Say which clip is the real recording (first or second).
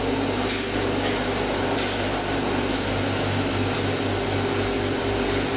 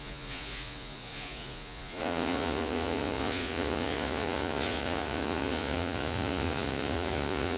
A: first